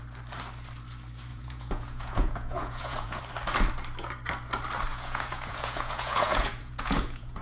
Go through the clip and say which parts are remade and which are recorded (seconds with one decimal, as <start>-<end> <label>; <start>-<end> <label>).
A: 0.0-1.3 recorded; 1.3-3.2 remade; 3.2-4.9 recorded; 4.9-7.4 remade